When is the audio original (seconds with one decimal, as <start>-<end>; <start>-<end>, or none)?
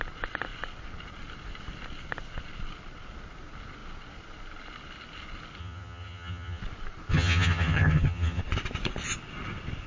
0.0-5.6; 6.6-7.1; 8.4-9.9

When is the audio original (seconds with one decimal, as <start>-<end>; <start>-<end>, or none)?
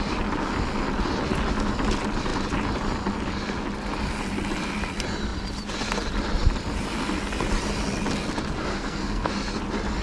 0.0-8.7; 9.3-10.0